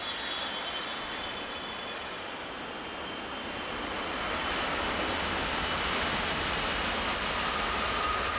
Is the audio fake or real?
real